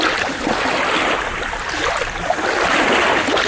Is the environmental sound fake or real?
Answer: real